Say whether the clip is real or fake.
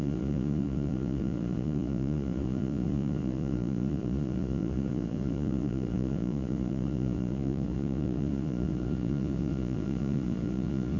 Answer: fake